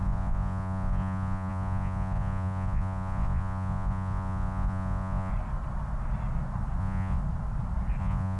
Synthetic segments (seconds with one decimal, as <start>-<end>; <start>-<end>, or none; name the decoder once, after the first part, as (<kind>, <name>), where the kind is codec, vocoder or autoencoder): 0.0-5.3 (vocoder, Vocos); 6.8-7.2; 8.0-8.4